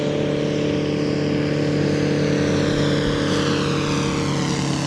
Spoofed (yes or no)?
no